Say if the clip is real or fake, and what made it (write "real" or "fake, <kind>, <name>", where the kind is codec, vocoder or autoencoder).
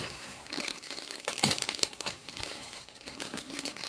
fake, codec, SNAC